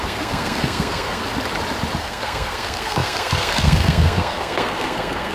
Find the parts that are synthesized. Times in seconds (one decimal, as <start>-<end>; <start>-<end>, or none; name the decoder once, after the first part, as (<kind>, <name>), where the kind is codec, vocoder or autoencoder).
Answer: 0.0-1.2 (codec, SNAC); 2.0-5.3

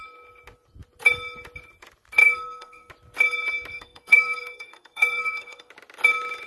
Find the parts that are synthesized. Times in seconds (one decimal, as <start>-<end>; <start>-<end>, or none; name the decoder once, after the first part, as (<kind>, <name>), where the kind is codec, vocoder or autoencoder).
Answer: 2.2-2.9 (codec, SNAC); 3.7-5.7

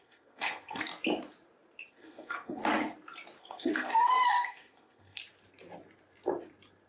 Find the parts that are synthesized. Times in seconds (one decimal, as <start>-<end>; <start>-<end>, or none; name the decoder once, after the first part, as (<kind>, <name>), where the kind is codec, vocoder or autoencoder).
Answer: 0.0-0.9 (codec, SNAC); 1.9-2.6; 3.4-5.2

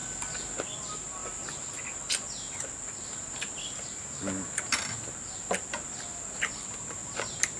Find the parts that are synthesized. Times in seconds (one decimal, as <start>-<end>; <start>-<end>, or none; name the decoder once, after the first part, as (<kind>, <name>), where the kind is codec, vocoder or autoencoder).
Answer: none

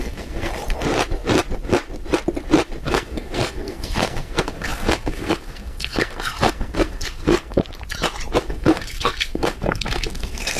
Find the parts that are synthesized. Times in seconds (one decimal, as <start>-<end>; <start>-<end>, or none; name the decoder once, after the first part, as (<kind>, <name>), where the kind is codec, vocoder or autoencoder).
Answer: 0.0-0.5 (codec, SNAC); 2.8-7.6; 8.4-10.6

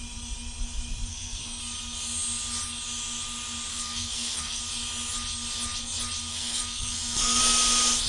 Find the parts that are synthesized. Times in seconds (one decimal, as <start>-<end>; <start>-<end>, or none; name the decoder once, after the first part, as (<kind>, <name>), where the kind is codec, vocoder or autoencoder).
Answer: 1.1-1.6 (codec, SNAC); 3.7-4.6; 6.3-7.4

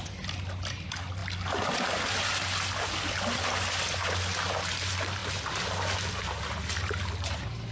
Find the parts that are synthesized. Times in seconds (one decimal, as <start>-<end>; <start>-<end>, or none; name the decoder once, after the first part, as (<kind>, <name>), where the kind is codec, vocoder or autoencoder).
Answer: none